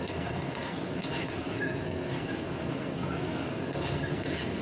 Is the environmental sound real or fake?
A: fake